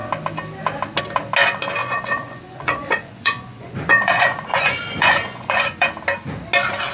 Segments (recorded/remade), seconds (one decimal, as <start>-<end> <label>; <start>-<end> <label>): 0.0-1.8 recorded; 1.8-5.9 remade; 5.9-6.9 recorded